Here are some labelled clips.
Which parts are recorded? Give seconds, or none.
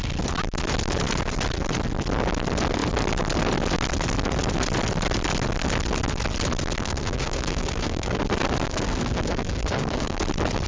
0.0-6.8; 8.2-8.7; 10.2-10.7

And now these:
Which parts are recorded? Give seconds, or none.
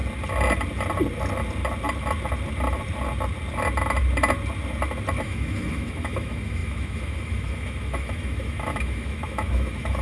0.0-5.2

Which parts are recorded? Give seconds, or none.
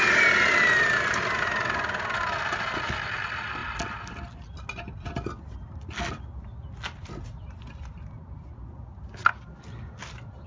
0.0-10.5